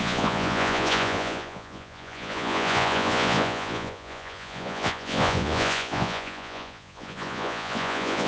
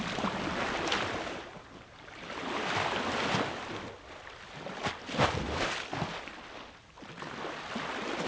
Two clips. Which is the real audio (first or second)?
second